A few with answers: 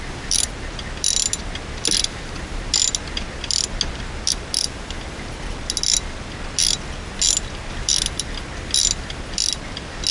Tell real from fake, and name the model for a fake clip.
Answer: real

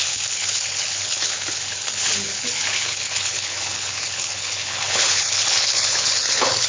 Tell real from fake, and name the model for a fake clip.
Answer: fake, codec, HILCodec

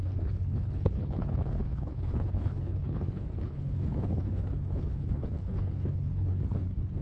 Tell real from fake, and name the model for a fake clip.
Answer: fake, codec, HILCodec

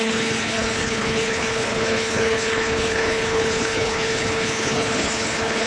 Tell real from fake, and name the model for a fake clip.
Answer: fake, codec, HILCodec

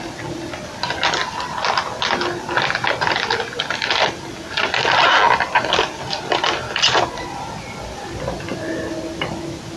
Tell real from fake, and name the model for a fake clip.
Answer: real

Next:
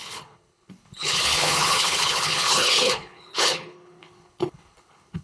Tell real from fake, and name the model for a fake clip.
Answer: fake, codec, HILCodec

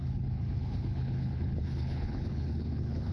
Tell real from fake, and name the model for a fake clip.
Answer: fake, codec, HILCodec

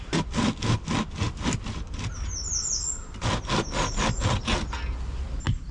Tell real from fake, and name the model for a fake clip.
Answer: real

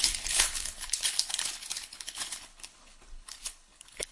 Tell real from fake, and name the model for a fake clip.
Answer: fake, codec, HILCodec